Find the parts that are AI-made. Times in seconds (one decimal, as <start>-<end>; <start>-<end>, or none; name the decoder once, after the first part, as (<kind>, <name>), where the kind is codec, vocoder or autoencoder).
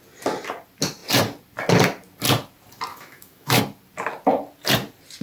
2.9-3.6 (autoencoder, DAC-VAE)